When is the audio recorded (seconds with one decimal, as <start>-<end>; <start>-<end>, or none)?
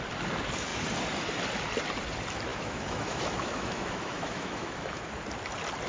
0.0-2.5; 5.1-5.9